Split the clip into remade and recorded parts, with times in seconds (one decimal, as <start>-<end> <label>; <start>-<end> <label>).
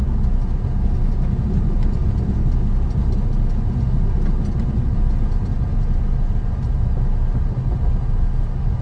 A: 0.0-8.8 recorded